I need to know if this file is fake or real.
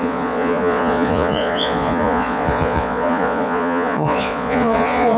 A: fake